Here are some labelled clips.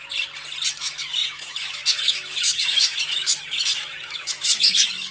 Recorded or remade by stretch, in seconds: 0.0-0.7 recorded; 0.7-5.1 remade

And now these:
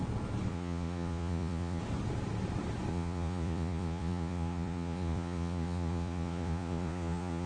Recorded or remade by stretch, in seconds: 0.0-0.5 recorded; 0.5-1.8 remade; 1.8-2.9 recorded; 2.9-7.5 remade

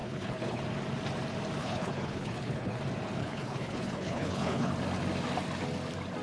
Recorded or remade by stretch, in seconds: 0.0-0.6 remade; 0.6-1.6 recorded; 1.6-2.8 remade; 2.8-3.2 recorded; 3.2-4.7 remade; 4.7-6.2 recorded

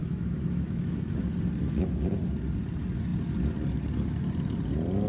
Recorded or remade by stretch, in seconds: 0.0-1.1 remade; 1.1-5.1 recorded